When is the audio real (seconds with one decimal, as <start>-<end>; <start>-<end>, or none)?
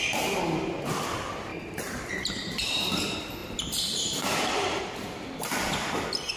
0.0-1.5; 2.8-3.4; 4.4-6.4